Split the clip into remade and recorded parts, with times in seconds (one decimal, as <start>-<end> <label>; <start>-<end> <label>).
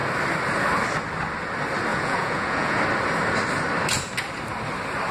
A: 0.0-1.9 recorded; 1.9-2.8 remade; 2.8-5.1 recorded